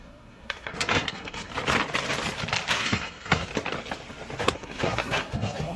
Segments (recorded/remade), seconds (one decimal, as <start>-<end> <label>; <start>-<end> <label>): 0.0-1.5 remade; 1.5-2.7 recorded; 2.7-3.5 remade; 3.5-4.4 recorded; 4.4-5.8 remade